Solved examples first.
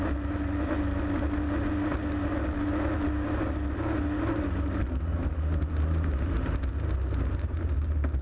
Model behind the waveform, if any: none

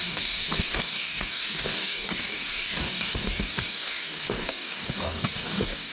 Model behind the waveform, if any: codec, DAC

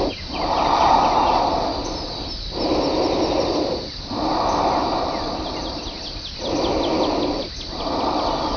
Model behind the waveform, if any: none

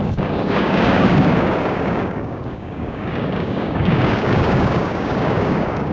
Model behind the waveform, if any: codec, DAC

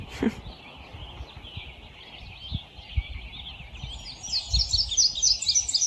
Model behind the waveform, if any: none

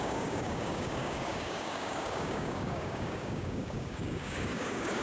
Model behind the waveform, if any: codec, DAC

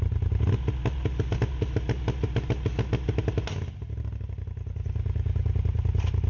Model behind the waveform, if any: none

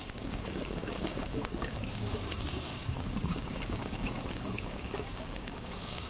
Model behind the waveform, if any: codec, DAC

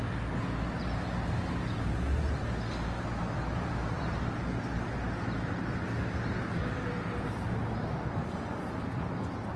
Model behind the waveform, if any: none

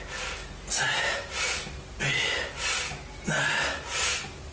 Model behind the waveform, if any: none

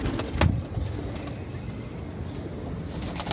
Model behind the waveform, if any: none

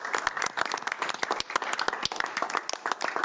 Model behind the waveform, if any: none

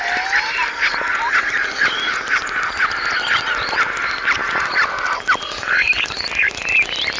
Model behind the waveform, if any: none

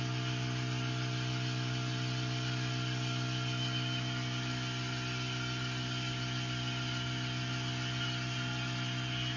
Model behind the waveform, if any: none